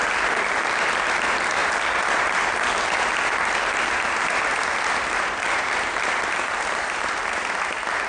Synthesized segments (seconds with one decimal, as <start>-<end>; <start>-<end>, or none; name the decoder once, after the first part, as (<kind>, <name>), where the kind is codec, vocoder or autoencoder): 0.0-8.1 (vocoder, BigVGAN v2)